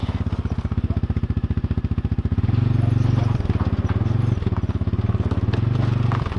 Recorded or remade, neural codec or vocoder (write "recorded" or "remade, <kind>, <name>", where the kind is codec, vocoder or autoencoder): recorded